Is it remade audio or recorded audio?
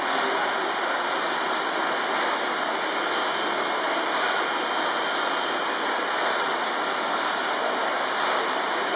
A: recorded